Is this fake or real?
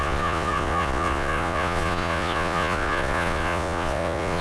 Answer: fake